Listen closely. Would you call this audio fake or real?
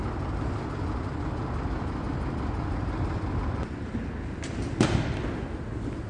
real